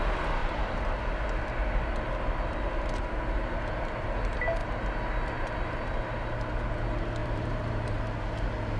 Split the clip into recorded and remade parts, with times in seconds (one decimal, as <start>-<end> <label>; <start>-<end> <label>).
0.0-0.4 recorded; 0.4-1.0 remade; 1.0-7.2 recorded; 7.2-8.0 remade; 8.0-8.8 recorded